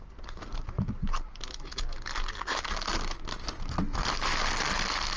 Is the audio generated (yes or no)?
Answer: no